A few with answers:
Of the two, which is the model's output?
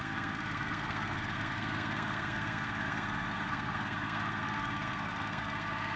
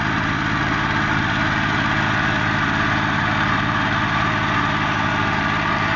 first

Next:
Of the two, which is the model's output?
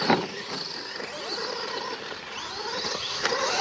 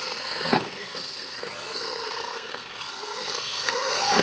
second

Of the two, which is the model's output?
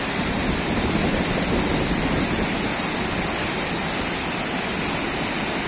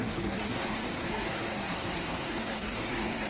second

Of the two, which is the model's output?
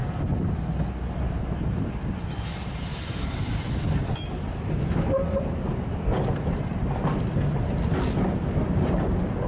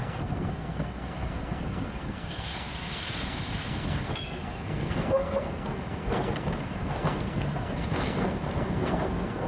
second